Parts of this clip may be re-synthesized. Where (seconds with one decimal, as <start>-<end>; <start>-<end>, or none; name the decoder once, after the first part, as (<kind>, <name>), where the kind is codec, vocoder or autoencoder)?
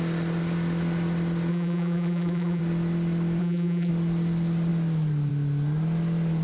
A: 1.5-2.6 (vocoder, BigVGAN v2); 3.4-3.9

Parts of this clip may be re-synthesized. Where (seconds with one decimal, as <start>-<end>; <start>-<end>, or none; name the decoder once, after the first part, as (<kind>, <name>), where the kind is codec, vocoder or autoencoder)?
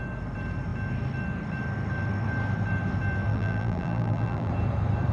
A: 3.3-4.5 (vocoder, BigVGAN v2)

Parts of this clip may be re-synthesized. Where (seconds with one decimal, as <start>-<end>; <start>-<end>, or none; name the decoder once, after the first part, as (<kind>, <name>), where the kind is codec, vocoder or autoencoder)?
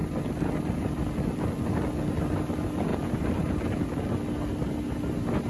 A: 2.9-3.8 (vocoder, BigVGAN v2)